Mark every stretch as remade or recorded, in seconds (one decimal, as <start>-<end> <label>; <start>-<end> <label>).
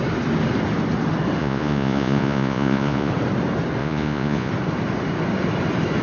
0.0-1.4 recorded; 1.4-3.1 remade; 3.1-3.8 recorded; 3.8-4.5 remade; 4.5-6.0 recorded